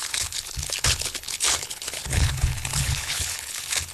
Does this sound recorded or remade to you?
remade